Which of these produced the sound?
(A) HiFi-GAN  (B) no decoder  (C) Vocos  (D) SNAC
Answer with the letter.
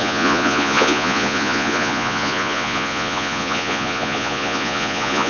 C